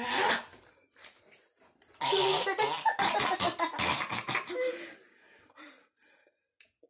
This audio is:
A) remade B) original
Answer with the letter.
B